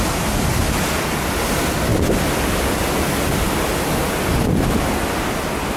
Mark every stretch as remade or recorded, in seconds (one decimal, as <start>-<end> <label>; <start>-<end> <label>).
0.0-5.8 recorded